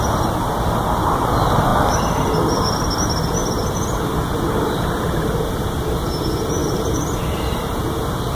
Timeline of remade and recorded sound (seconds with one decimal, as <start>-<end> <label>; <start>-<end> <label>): 0.0-6.6 recorded; 6.6-7.2 remade; 7.2-8.3 recorded